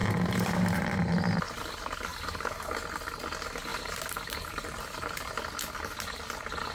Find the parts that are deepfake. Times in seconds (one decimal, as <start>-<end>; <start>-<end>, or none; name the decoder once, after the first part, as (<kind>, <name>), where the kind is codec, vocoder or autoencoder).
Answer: 0.0-1.7 (vocoder, BigVGAN v2); 2.1-2.9; 3.7-5.3